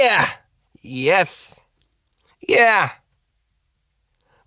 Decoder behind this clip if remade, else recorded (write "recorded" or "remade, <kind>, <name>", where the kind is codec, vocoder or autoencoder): remade, vocoder, Vocos